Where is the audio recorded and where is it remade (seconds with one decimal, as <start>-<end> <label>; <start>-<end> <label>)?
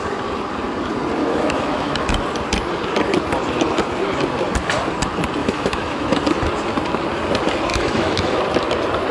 0.0-1.2 recorded; 1.2-2.2 remade; 2.2-5.4 recorded; 5.4-6.2 remade; 6.2-7.7 recorded; 7.7-8.4 remade; 8.4-9.1 recorded